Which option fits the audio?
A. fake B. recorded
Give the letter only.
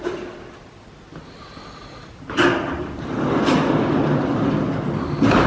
B